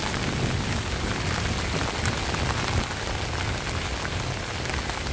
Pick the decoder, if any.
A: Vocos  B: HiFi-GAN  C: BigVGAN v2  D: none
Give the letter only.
D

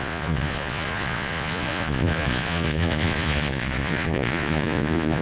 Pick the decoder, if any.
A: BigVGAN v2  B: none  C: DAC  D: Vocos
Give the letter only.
D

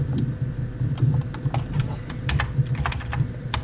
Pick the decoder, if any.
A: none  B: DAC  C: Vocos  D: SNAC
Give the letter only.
A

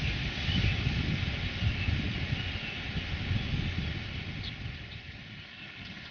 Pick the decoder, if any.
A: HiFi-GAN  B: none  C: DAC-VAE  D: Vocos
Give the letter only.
B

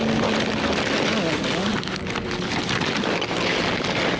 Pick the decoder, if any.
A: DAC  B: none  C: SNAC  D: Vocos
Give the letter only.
B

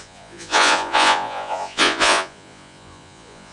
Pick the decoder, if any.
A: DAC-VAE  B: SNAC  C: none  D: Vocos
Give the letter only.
D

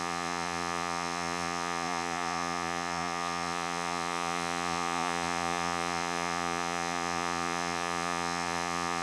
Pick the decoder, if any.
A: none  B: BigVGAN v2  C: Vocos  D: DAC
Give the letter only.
C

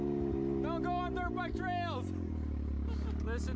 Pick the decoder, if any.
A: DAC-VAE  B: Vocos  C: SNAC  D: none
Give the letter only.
D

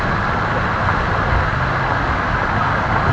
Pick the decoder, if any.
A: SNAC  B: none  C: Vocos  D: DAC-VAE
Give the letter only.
B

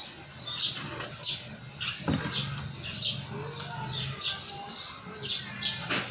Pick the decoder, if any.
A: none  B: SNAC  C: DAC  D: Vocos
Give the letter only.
A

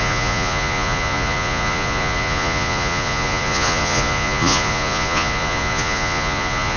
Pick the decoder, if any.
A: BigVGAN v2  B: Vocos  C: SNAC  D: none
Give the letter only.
B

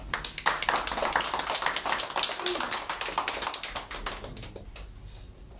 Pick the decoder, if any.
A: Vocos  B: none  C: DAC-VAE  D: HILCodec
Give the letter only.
B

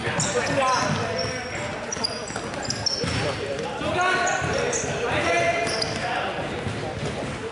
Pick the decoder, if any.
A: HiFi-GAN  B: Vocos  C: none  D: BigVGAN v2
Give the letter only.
C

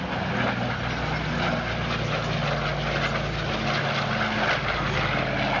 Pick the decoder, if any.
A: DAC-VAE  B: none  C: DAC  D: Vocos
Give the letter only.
B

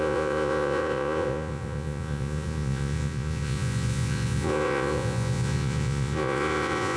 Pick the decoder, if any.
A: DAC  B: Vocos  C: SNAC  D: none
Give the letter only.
B